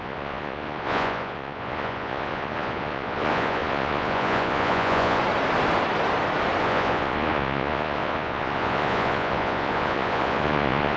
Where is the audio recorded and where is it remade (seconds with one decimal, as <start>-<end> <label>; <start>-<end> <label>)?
0.0-5.2 remade; 5.2-6.6 recorded; 6.6-11.0 remade